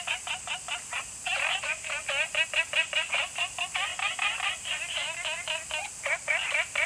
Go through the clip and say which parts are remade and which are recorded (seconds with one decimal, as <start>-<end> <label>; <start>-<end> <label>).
0.0-6.9 recorded